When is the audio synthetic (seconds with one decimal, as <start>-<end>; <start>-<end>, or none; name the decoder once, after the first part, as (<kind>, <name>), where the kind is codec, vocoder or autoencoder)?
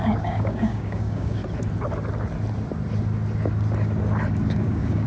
0.0-1.4 (codec, DAC); 4.5-5.1